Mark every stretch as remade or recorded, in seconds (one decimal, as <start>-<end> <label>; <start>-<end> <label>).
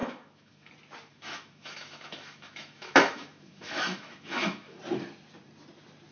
0.0-0.7 remade; 0.7-1.1 recorded; 1.1-4.8 remade; 4.8-6.1 recorded